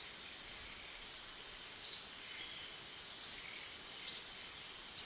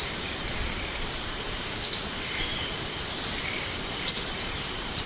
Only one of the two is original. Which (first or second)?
first